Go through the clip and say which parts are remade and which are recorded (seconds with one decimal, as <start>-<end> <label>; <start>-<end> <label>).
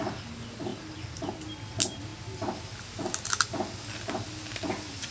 0.0-0.7 recorded; 0.7-1.3 remade; 1.3-5.1 recorded